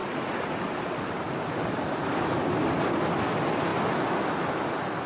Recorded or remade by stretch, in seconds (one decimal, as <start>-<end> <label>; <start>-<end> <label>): 0.0-3.1 remade; 3.1-3.7 recorded; 3.7-4.3 remade; 4.3-5.1 recorded